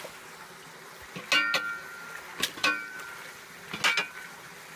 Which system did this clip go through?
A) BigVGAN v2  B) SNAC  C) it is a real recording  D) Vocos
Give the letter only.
C